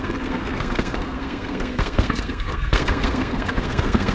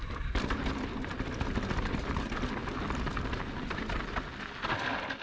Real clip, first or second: second